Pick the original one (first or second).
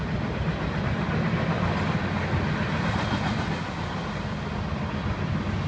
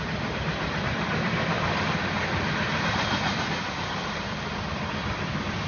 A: first